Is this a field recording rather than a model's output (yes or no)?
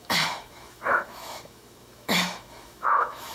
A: no